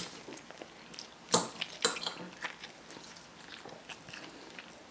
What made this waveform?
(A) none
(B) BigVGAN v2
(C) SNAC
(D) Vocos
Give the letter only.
A